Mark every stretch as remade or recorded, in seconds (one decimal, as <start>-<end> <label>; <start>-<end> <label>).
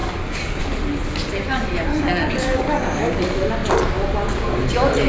0.0-0.6 remade; 0.6-1.9 recorded; 1.9-3.2 remade; 3.2-5.1 recorded